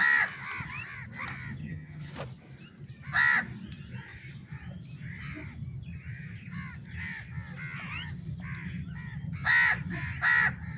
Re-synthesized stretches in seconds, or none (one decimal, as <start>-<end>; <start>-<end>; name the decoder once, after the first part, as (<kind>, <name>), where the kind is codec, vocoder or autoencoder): 1.6-2.1 (vocoder, HiFi-GAN)